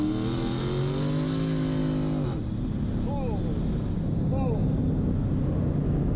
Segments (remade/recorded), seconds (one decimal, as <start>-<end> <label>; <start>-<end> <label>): 0.0-6.2 recorded